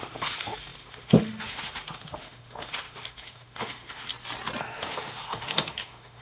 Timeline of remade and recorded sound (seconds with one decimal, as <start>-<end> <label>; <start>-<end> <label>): 0.0-4.1 remade; 4.1-4.6 recorded; 4.6-6.2 remade

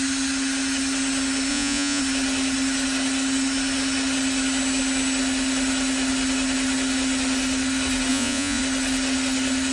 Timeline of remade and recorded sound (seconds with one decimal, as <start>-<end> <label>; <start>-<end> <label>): 0.0-1.5 recorded; 1.5-2.0 remade; 2.0-8.1 recorded; 8.1-8.6 remade; 8.6-9.7 recorded

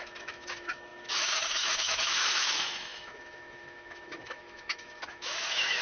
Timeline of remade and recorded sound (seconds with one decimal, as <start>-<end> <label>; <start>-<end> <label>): 0.0-5.8 remade

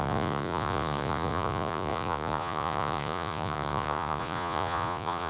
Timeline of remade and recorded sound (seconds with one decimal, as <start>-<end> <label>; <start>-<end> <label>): 0.0-5.3 remade